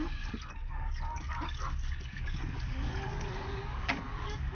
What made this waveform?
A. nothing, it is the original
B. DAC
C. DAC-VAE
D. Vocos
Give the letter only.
B